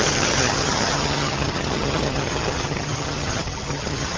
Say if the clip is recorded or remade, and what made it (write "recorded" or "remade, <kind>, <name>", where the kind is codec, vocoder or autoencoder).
remade, vocoder, HiFi-GAN